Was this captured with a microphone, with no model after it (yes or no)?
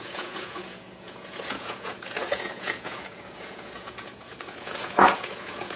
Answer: no